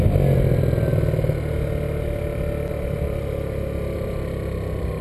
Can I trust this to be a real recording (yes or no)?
yes